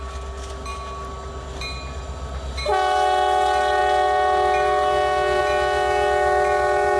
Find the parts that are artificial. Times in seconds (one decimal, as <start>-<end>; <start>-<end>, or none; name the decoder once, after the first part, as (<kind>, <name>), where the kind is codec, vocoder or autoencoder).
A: none